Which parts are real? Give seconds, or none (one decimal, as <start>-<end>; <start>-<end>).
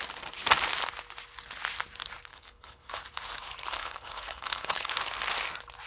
0.0-2.3; 3.0-3.8; 4.9-5.9